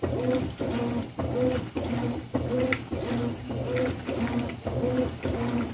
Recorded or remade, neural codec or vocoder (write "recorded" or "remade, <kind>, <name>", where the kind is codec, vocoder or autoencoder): recorded